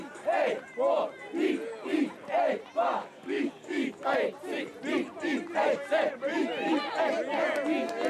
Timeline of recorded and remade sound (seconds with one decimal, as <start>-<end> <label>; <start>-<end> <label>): 0.0-3.0 recorded; 3.0-3.9 remade; 3.9-8.1 recorded